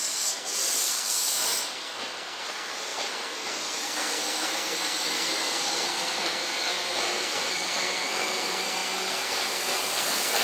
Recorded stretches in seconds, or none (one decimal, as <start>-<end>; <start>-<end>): none